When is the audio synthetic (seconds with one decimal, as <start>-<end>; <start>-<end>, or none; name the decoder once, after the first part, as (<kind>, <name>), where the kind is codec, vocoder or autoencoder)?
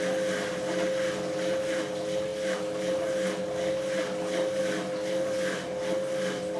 none